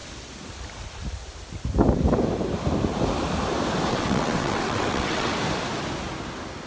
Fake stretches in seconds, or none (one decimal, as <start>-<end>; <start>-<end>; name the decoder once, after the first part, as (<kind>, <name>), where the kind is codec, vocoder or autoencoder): 3.9-5.3 (vocoder, WaveNeXt)